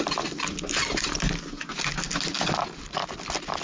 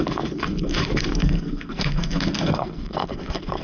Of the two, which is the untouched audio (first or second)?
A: first